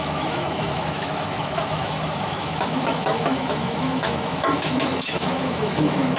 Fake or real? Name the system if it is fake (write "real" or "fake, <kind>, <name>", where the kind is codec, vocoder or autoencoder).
fake, autoencoder, DAC-VAE